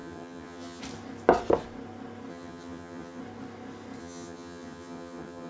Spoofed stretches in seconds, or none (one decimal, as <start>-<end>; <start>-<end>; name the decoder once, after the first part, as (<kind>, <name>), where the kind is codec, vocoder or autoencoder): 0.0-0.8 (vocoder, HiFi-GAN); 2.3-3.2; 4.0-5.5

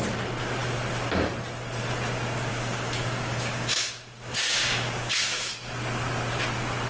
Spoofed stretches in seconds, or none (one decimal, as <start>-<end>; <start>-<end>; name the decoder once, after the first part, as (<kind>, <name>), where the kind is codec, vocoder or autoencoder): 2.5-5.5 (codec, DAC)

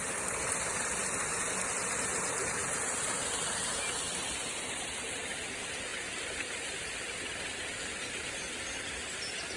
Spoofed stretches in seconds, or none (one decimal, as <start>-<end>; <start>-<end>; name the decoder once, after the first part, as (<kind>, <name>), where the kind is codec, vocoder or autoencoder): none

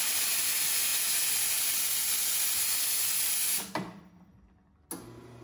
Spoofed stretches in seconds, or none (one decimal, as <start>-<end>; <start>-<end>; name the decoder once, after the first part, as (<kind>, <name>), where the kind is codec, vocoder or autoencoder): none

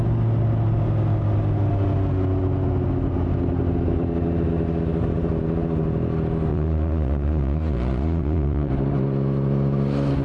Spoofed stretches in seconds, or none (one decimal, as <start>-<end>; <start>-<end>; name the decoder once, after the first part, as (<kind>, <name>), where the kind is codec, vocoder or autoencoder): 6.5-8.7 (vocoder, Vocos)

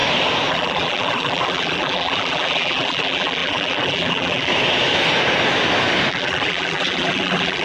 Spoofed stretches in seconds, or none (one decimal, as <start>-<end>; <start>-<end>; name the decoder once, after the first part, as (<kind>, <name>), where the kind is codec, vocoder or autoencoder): 0.5-4.5 (vocoder, BigVGAN v2); 6.1-7.6

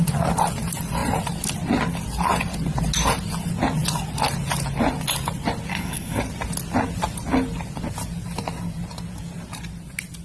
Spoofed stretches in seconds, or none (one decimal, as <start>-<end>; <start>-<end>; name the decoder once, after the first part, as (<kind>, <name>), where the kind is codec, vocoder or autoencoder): 5.7-6.2 (codec, SNAC)